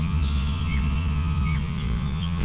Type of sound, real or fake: fake